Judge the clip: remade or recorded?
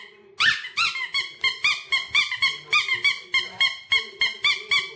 recorded